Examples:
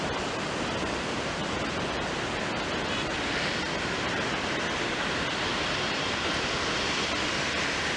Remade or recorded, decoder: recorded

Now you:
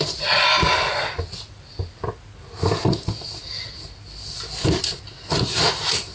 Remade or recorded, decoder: recorded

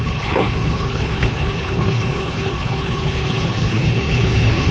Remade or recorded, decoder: remade, codec, HILCodec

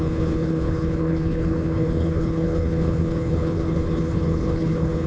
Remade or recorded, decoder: remade, codec, HILCodec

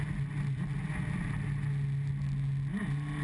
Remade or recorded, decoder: recorded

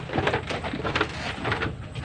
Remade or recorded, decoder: recorded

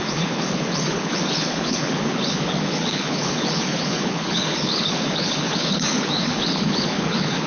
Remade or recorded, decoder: remade, codec, HILCodec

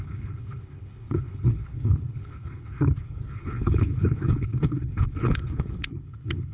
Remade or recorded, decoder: remade, codec, HILCodec